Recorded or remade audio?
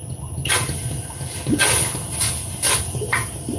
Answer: recorded